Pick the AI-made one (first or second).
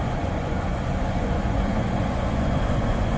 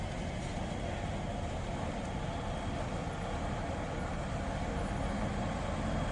first